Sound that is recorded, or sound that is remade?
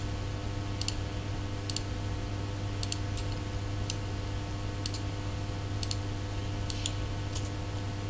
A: recorded